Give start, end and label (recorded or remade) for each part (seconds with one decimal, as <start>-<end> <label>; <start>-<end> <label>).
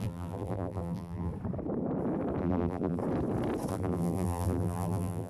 0.0-1.3 remade; 1.3-2.4 recorded; 2.4-3.0 remade; 3.0-3.7 recorded; 3.7-5.3 remade